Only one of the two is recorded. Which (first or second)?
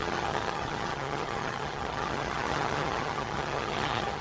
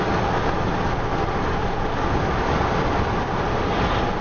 second